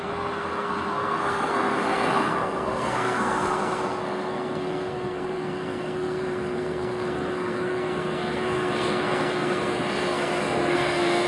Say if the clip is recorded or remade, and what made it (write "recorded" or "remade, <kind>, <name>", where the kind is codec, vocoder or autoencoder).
remade, codec, SNAC